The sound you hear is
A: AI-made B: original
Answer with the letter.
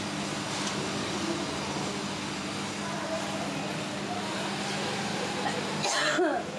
B